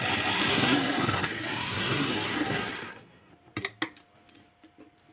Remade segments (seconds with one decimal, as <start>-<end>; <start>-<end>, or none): 0.5-3.3

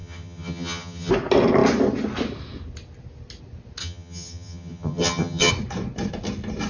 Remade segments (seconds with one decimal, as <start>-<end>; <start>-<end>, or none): 0.0-1.1; 3.8-5.5

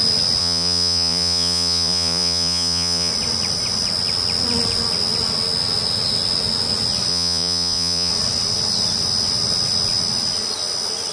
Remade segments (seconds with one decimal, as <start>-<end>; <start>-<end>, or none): 0.4-3.1; 7.1-8.1

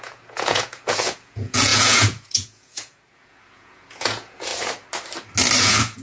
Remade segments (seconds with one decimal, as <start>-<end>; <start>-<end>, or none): 0.0-4.5; 5.6-6.0